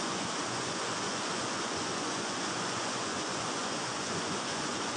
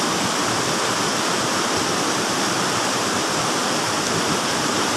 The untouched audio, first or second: second